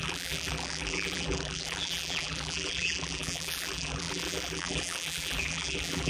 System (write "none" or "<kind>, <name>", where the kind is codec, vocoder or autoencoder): vocoder, BigVGAN v2